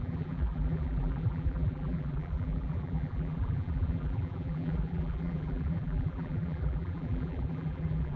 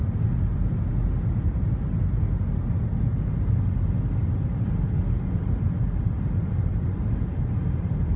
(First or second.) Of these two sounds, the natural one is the second